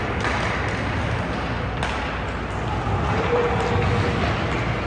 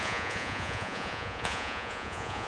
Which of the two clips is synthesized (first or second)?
second